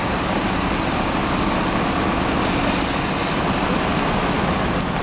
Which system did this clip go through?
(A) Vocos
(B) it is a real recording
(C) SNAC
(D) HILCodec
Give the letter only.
B